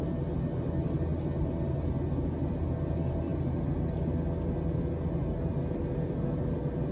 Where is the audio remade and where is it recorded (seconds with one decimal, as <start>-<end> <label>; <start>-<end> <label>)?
0.0-6.9 recorded